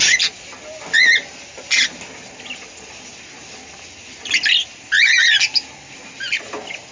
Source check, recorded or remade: recorded